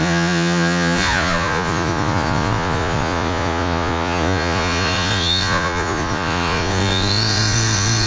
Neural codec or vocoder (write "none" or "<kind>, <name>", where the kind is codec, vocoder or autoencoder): vocoder, Vocos